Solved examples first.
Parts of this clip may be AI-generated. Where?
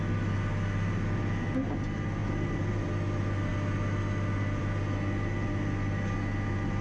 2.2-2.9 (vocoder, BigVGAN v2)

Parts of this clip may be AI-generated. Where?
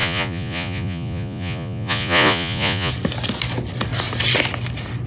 0.0-2.9 (vocoder, Vocos)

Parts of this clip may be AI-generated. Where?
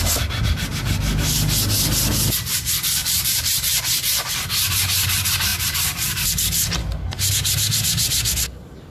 3.0-3.8 (vocoder, BigVGAN v2)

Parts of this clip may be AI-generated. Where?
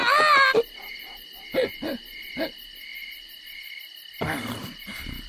none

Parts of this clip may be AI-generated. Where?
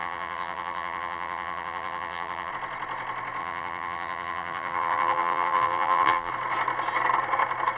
0.0-2.5 (vocoder, BigVGAN v2); 3.4-6.3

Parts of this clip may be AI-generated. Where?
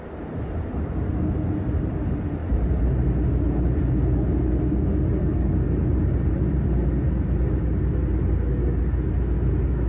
none